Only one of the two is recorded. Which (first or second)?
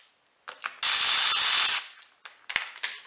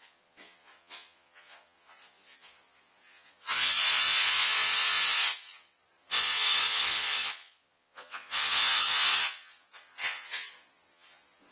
first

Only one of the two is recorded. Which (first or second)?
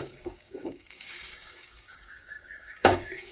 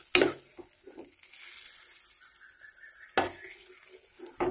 second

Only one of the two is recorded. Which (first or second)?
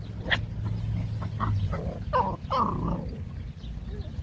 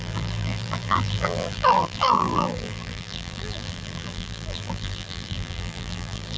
first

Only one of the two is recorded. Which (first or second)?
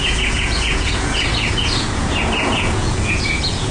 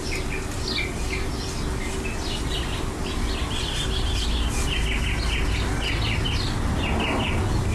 second